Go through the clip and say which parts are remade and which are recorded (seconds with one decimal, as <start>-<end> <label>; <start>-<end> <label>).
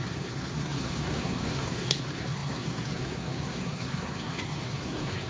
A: 0.0-5.3 remade